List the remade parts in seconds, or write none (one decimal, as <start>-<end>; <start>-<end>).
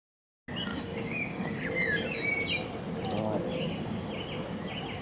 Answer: 0.7-1.6; 3.5-4.1